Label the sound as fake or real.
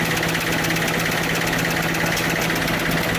real